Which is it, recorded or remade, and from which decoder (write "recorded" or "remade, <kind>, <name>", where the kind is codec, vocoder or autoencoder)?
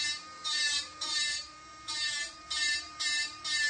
remade, vocoder, BigVGAN v2